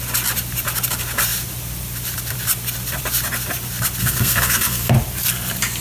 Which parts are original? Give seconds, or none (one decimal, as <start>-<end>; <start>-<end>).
0.0-4.0; 4.9-5.8